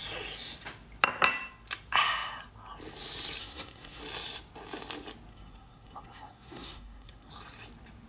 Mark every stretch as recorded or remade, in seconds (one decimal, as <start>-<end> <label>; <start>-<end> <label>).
0.0-3.4 recorded; 3.4-4.0 remade; 4.0-5.3 recorded; 5.3-7.3 remade; 7.3-8.1 recorded